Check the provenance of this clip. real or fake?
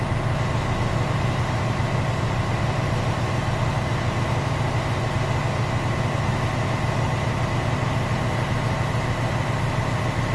real